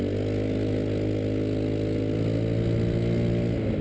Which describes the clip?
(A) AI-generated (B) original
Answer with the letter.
B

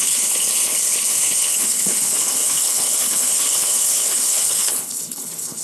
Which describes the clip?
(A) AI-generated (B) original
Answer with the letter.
A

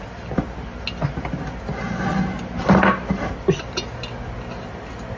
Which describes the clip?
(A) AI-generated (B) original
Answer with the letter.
B